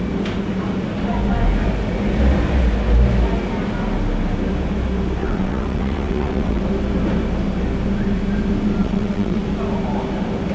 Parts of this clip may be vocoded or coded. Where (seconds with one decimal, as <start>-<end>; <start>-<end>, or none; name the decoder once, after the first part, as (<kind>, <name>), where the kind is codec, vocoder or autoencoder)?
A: 5.2-6.6 (vocoder, WaveNeXt); 8.8-9.4